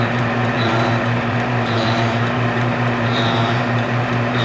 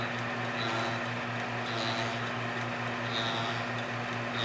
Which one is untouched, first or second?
second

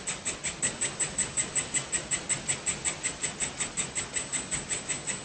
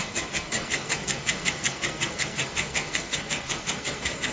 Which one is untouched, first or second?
first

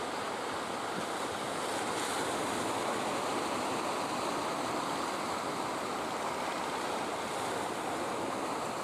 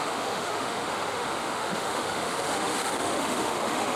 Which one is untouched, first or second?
first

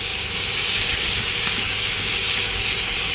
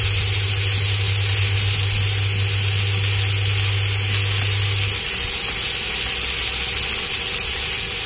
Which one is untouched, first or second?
second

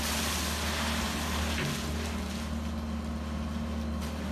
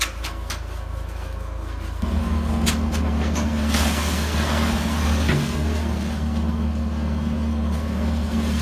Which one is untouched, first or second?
first